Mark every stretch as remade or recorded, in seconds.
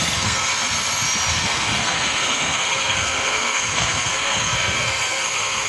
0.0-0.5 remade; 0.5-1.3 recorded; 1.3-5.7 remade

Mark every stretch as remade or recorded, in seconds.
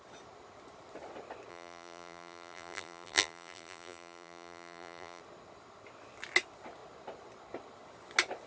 0.0-1.5 recorded; 1.5-5.2 remade; 5.2-8.5 recorded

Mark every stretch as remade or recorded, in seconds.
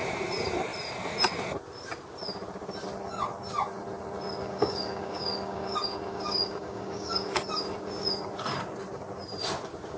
0.0-4.4 recorded; 4.4-7.5 remade; 7.5-10.0 recorded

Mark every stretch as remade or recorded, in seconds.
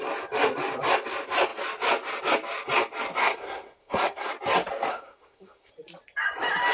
0.0-3.2 recorded; 3.2-4.3 remade; 4.3-4.9 recorded; 4.9-5.7 remade; 5.7-6.7 recorded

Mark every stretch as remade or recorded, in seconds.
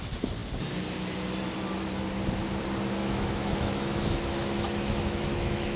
0.0-3.0 recorded; 3.0-5.8 remade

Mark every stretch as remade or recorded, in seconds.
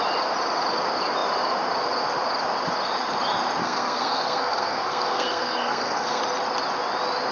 0.0-3.6 recorded; 3.6-6.2 remade; 6.2-7.3 recorded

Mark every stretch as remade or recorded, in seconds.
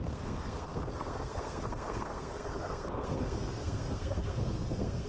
0.0-5.1 remade